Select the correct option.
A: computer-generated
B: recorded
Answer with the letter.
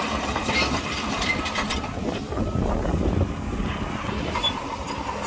B